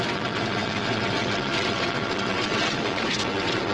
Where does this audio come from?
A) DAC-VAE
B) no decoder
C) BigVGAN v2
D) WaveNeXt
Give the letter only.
D